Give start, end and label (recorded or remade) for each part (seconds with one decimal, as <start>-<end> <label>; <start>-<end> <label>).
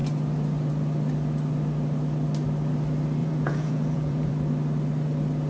0.0-3.2 recorded; 3.2-4.3 remade; 4.3-5.5 recorded